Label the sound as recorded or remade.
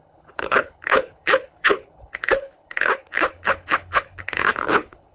remade